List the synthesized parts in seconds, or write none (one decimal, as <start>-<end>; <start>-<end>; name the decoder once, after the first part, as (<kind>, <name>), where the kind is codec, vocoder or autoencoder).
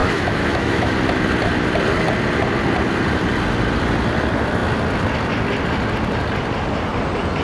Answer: 0.0-0.9 (autoencoder, DAC-VAE)